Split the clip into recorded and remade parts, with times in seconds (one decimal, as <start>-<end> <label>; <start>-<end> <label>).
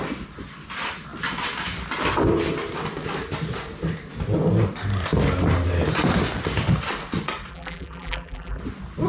0.0-7.5 recorded; 7.5-8.6 remade; 8.6-9.1 recorded